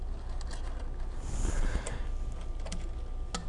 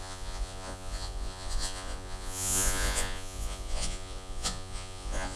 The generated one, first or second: second